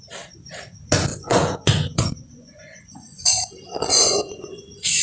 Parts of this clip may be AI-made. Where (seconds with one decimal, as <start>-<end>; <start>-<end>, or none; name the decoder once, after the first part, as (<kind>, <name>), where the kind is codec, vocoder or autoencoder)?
1.1-3.3 (vocoder, Vocos); 3.9-4.6